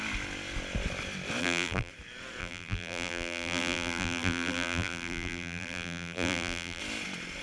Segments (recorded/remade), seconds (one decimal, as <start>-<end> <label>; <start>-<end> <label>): 0.0-1.4 recorded; 1.4-1.9 remade; 1.9-2.4 recorded; 2.4-6.8 remade; 6.8-7.4 recorded